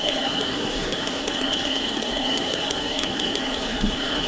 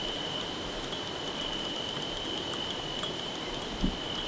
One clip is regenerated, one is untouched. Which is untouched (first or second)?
second